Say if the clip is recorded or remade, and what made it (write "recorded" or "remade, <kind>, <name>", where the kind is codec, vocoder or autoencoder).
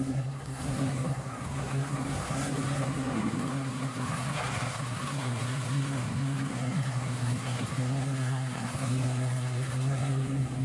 remade, codec, SNAC